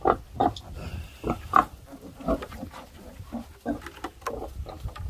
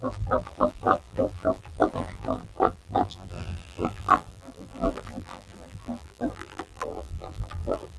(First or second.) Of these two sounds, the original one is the first